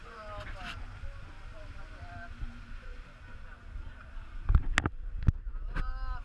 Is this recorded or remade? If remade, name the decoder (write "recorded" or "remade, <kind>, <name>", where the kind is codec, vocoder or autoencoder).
recorded